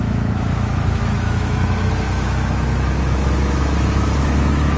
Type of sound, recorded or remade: remade